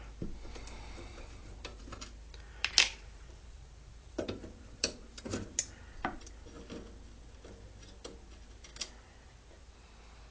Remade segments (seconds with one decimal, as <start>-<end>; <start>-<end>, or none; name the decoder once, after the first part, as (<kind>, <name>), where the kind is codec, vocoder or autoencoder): 1.1-1.8 (vocoder, BigVGAN v2); 2.9-5.5